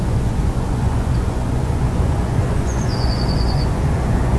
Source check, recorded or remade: remade